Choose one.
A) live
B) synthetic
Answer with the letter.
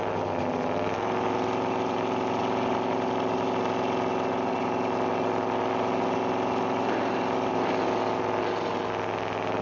A